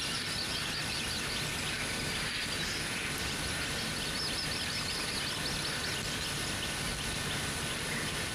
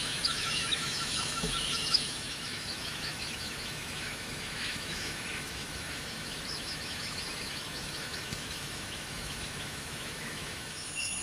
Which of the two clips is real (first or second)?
first